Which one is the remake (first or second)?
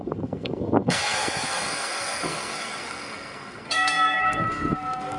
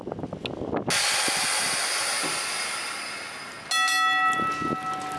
first